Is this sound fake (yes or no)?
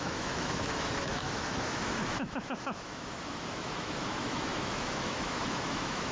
yes